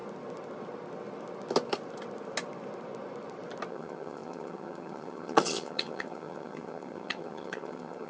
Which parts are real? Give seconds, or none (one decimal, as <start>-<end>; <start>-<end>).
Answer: 0.0-3.7